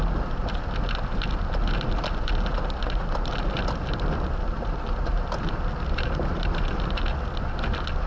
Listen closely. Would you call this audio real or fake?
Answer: real